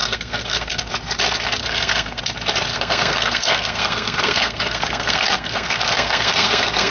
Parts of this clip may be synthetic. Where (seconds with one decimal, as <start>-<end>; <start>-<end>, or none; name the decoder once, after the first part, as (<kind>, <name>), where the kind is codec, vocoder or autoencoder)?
0.0-0.9 (codec, SNAC); 1.6-2.2; 2.7-6.9